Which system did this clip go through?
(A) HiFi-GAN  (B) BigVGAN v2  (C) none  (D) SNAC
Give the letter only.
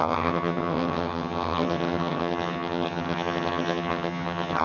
A